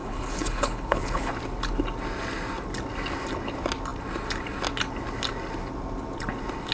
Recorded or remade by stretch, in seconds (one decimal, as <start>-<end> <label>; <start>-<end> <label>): 0.0-1.3 remade; 1.3-6.7 recorded